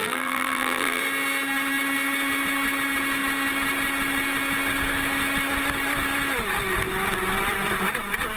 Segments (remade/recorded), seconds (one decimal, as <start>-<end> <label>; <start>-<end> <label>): 0.0-1.0 remade; 1.0-8.4 recorded